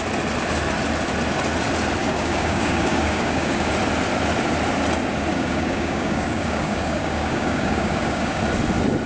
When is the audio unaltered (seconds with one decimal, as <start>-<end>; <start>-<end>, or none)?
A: 0.0-2.0; 3.7-5.3; 8.4-9.1